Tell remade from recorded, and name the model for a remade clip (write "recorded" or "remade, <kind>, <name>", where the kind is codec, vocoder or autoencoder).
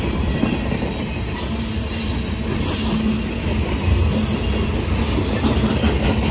recorded